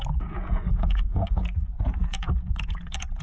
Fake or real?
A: fake